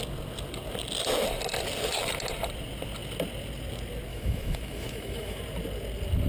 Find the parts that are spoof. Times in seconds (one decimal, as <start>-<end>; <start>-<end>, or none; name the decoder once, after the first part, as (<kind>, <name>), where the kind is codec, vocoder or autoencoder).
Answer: 4.1-5.4 (autoencoder, DAC-VAE)